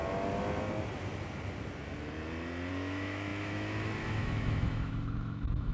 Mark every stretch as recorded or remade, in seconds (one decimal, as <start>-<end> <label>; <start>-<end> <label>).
0.0-2.7 recorded; 2.7-5.7 remade